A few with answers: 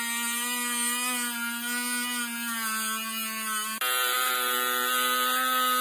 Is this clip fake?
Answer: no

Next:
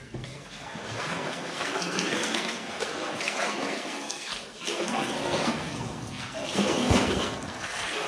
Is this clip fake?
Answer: yes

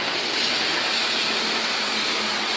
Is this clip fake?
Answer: no